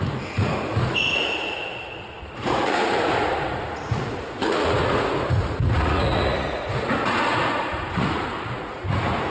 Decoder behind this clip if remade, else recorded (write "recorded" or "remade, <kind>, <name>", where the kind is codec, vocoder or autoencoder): remade, vocoder, Vocos